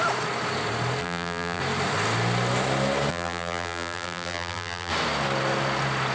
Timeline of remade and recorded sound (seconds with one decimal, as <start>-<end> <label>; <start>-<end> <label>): 0.0-1.0 recorded; 1.0-1.6 remade; 1.6-3.1 recorded; 3.1-4.9 remade; 4.9-6.1 recorded